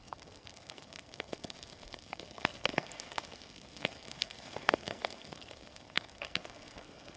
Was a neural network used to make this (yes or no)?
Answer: yes